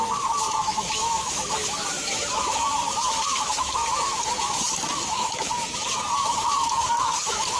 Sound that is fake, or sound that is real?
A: fake